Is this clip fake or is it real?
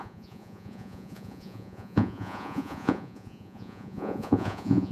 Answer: fake